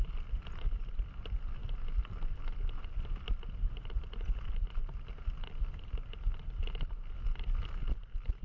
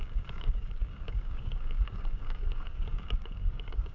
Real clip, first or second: first